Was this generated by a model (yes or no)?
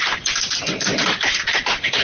yes